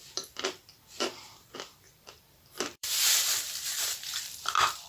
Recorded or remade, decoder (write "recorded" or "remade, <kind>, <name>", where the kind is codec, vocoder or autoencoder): remade, vocoder, BigVGAN v2